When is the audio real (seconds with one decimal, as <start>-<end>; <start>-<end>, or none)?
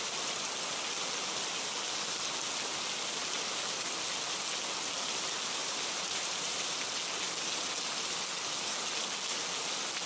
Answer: 0.0-5.6; 6.7-10.1